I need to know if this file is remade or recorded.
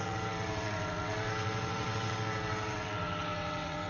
remade